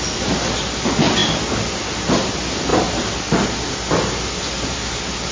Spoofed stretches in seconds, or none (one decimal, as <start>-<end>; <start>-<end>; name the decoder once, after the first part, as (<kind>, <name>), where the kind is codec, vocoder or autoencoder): none